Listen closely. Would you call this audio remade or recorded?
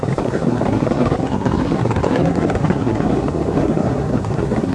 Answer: remade